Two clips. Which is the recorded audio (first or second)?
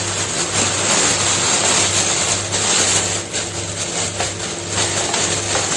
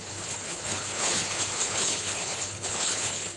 first